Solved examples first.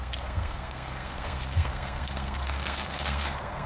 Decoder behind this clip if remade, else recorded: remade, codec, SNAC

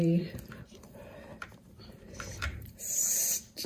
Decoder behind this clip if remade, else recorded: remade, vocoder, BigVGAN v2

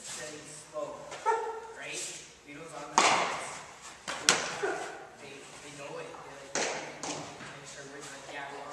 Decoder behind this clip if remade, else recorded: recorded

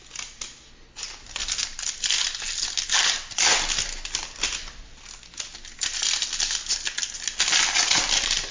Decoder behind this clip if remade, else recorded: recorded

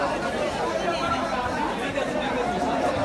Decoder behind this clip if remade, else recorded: remade, vocoder, BigVGAN v2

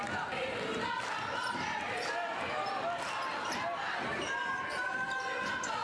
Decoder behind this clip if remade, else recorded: recorded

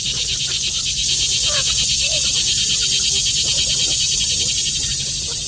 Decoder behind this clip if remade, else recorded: recorded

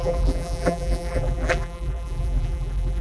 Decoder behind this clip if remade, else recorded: remade, vocoder, BigVGAN v2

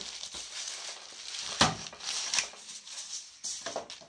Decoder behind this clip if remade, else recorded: recorded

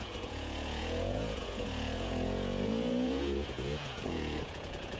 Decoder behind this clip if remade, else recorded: remade, vocoder, Vocos